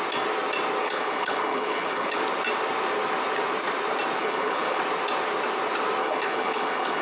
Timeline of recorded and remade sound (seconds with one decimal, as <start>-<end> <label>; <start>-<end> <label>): 0.0-0.8 recorded; 0.8-2.2 remade; 2.2-4.2 recorded; 4.2-4.8 remade; 4.8-6.0 recorded; 6.0-7.0 remade